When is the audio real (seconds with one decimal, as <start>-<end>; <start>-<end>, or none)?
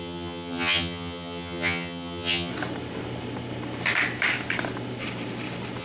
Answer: 2.5-5.8